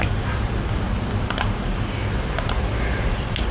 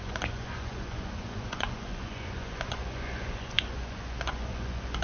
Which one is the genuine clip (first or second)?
first